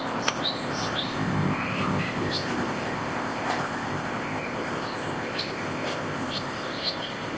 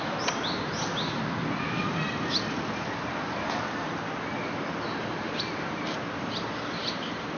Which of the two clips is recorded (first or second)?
second